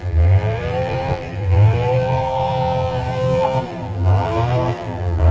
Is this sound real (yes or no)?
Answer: no